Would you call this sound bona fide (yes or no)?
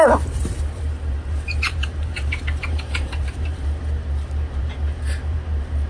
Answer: no